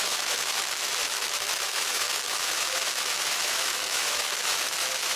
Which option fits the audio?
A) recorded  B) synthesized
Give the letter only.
B